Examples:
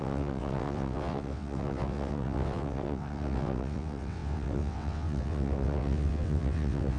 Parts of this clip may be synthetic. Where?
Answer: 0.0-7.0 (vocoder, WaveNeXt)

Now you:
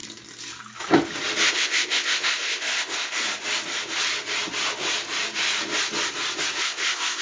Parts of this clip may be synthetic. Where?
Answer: 1.5-3.2 (codec, ZipCodec); 6.6-7.2

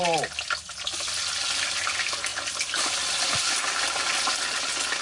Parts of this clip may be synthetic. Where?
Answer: none

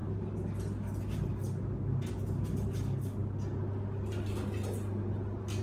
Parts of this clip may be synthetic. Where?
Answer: none